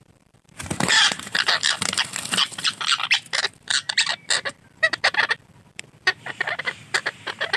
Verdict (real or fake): fake